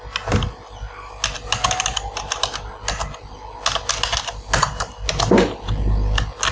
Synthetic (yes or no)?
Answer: no